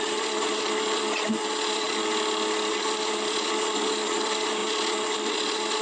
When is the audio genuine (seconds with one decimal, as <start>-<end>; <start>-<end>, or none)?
2.0-2.7